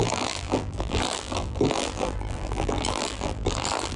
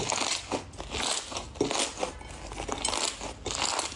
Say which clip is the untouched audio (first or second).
second